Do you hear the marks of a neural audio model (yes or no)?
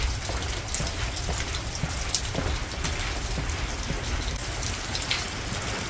no